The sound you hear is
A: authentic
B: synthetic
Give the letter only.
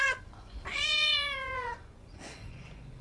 B